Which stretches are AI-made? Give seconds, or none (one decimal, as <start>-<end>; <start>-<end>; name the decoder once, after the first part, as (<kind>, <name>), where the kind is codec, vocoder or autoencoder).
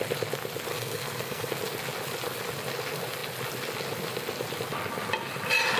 0.7-1.5 (codec, SNAC)